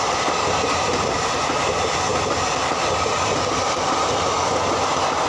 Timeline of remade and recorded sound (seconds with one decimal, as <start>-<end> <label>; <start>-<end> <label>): 0.0-5.3 recorded